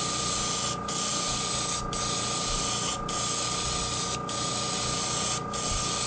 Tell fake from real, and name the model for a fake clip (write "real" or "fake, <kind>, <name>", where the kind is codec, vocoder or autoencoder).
real